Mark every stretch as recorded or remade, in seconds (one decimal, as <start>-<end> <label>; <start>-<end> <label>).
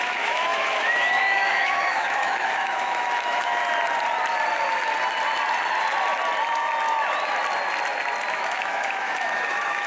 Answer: 0.0-3.6 remade; 3.6-8.3 recorded; 8.3-9.9 remade